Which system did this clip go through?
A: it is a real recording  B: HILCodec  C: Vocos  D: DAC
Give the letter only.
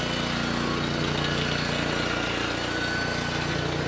A